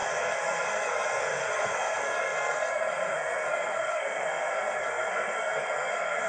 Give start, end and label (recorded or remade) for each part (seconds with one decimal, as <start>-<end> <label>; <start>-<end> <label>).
0.0-6.3 remade